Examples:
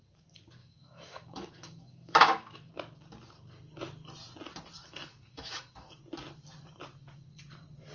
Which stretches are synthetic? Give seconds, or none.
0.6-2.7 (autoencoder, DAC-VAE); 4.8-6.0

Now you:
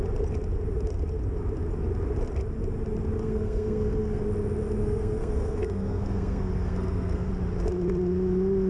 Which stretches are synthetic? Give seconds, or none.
3.2-4.2 (codec, SNAC); 4.8-7.3

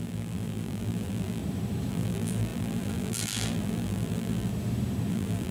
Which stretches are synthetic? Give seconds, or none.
0.0-1.4 (vocoder, BigVGAN v2); 1.9-4.5; 5.1-5.5

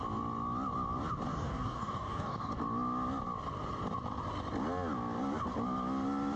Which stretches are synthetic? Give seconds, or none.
1.3-2.6 (codec, DAC)

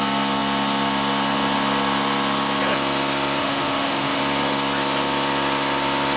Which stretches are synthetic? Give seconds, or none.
3.4-4.2 (autoencoder, DAC-VAE)

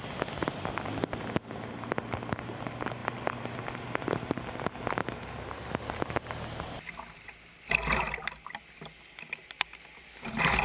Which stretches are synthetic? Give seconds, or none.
none

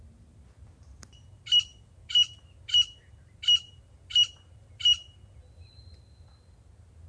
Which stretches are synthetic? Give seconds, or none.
none